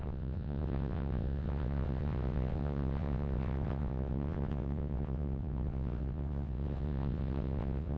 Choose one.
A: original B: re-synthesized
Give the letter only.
B